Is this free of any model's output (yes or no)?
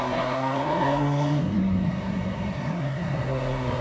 no